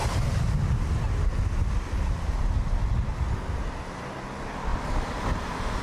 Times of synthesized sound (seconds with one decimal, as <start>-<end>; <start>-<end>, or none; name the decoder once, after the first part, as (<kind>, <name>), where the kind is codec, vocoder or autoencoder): 4.7-5.8 (vocoder, BigVGAN v2)